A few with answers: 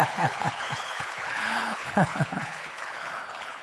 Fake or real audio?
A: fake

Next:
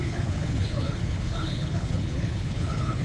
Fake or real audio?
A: fake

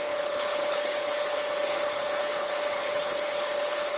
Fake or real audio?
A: fake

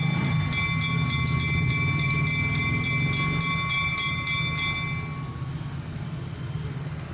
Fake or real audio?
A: real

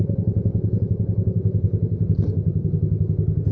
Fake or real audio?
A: fake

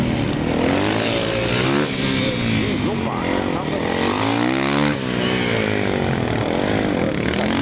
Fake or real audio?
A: real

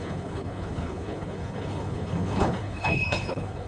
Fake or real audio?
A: fake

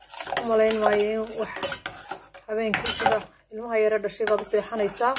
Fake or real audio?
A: real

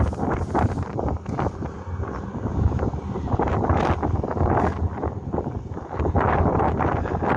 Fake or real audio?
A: real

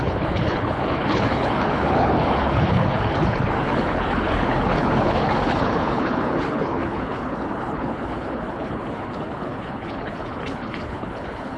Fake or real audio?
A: fake